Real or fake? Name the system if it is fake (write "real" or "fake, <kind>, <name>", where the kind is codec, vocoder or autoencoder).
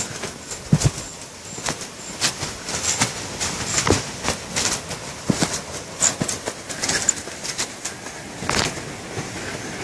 real